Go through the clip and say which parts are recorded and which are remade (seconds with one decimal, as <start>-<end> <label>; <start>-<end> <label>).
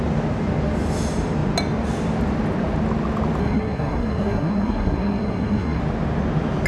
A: 0.0-3.4 recorded; 3.4-5.8 remade; 5.8-6.7 recorded